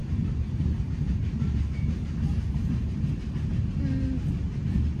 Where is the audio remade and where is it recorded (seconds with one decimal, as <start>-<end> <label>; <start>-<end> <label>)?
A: 0.0-3.0 remade; 3.0-5.0 recorded